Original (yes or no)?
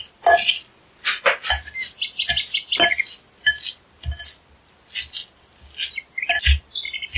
yes